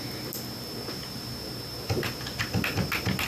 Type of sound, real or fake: real